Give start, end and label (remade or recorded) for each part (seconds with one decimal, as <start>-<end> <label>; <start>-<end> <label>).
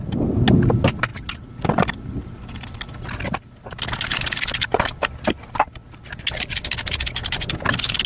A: 0.0-8.1 recorded